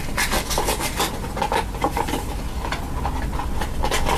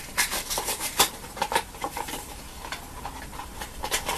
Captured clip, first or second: first